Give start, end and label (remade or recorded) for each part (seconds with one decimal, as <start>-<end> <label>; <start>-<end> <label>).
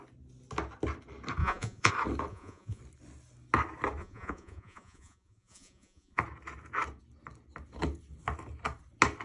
0.0-1.4 recorded; 1.4-1.9 remade; 1.9-2.3 recorded; 2.3-2.8 remade; 2.8-4.0 recorded; 4.0-6.2 remade; 6.2-9.2 recorded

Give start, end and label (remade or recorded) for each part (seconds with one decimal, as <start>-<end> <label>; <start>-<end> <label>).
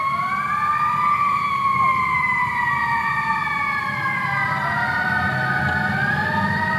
0.0-6.8 recorded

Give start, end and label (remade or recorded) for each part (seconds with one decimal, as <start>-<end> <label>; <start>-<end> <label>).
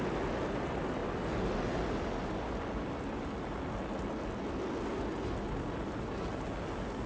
0.0-7.1 recorded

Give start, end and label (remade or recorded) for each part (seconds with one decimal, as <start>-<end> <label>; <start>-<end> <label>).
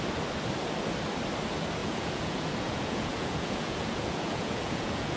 0.0-1.8 recorded; 1.8-5.2 remade